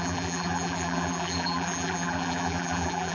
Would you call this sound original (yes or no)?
no